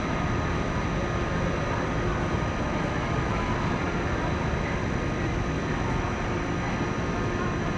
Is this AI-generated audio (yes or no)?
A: no